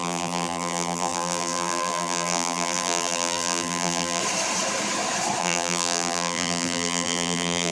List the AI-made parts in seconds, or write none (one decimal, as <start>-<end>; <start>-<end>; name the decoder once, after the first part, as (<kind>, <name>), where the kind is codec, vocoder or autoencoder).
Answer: 0.0-4.2 (vocoder, BigVGAN v2); 5.4-7.7